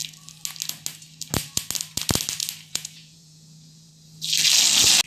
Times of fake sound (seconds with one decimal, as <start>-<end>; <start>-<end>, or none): 2.7-3.9